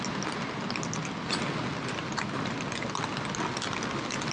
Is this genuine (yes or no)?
yes